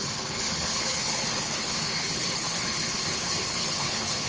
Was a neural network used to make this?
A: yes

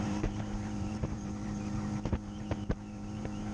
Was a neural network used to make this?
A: yes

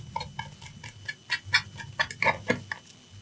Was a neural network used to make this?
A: no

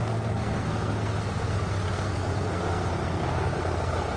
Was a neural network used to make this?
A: yes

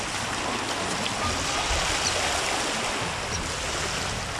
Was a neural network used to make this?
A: no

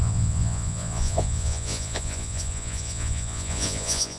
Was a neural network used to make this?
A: yes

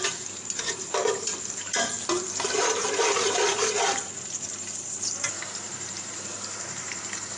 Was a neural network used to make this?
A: yes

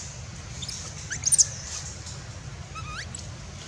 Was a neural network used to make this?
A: no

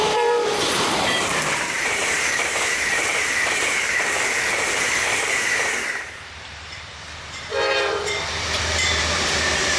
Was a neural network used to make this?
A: yes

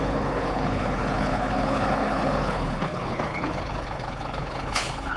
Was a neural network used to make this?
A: yes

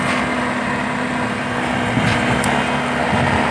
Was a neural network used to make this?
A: no